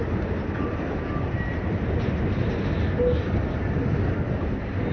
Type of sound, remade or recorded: recorded